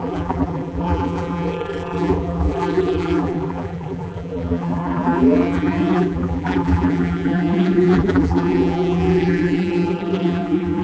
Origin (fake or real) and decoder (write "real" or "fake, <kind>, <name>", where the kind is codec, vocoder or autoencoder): fake, vocoder, BigVGAN v2